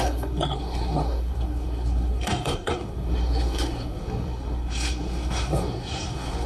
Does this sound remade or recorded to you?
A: remade